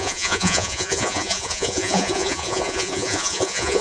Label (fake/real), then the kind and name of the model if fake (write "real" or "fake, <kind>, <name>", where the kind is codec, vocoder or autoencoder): fake, vocoder, Vocos